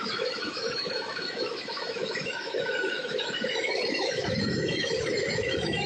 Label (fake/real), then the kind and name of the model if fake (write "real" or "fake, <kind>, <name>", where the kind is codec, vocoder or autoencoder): fake, autoencoder, DAC-VAE